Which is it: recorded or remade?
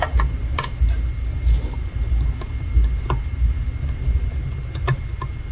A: recorded